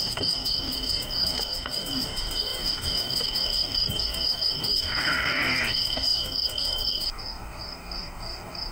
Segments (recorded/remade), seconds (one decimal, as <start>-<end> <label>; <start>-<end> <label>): 0.0-8.7 remade